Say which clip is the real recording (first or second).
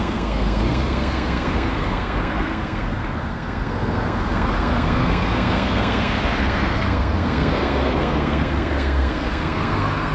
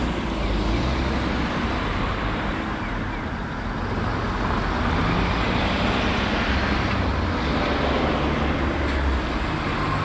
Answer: second